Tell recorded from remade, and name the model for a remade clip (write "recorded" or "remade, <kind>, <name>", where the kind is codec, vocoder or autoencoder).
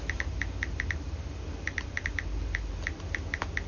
recorded